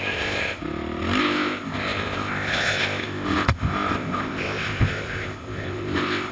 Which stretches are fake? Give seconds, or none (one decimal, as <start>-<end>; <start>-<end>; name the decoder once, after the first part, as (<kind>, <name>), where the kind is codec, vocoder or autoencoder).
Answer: 0.0-0.6 (codec, ZipCodec); 1.2-6.3